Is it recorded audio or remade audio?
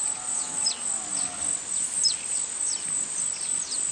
recorded